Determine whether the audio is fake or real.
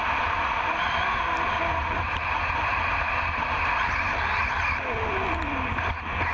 real